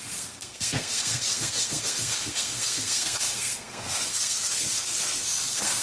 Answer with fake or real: fake